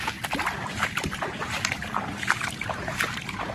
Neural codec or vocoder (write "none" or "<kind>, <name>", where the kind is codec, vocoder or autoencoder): none